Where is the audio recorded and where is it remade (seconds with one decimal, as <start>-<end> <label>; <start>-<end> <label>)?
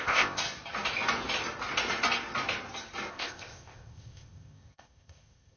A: 0.0-0.4 remade; 0.4-3.1 recorded; 3.1-5.6 remade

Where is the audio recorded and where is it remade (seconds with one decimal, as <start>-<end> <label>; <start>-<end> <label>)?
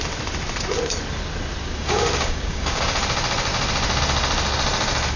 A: 0.0-1.6 recorded; 1.6-2.8 remade; 2.8-5.2 recorded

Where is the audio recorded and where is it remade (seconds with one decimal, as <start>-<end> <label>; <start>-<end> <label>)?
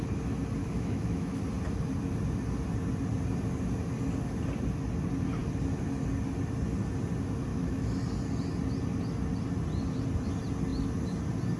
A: 0.0-0.6 recorded; 0.6-1.4 remade; 1.4-7.5 recorded; 7.5-8.0 remade; 8.0-11.6 recorded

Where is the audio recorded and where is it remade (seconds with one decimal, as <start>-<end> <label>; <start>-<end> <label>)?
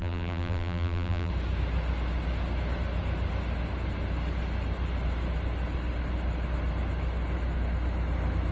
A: 0.0-1.3 remade; 1.3-8.5 recorded